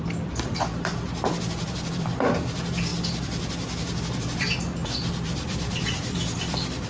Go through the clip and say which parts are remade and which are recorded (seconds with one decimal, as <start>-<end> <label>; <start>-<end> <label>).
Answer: 0.0-2.9 remade; 2.9-4.0 recorded; 4.0-6.9 remade